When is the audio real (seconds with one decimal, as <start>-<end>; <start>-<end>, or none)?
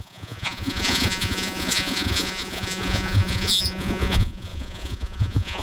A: none